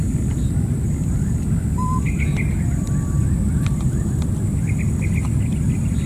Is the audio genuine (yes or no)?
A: yes